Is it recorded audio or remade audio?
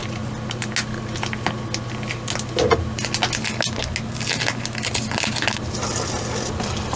recorded